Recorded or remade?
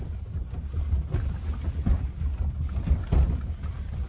recorded